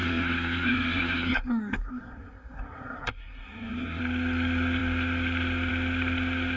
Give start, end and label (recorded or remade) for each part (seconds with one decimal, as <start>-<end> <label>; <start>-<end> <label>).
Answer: 0.0-4.0 remade; 4.0-6.6 recorded